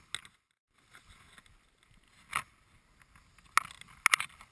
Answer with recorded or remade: recorded